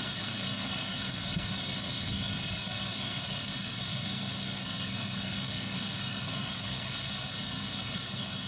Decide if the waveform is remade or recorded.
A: remade